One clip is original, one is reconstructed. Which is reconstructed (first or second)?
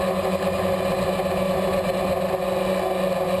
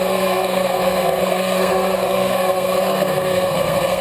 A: second